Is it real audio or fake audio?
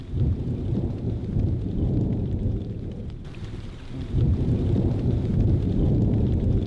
fake